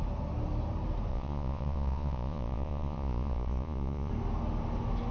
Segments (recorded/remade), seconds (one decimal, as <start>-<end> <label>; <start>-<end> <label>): 0.0-1.1 recorded; 1.1-4.1 remade; 4.1-5.1 recorded